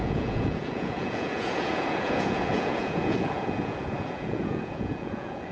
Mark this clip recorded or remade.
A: remade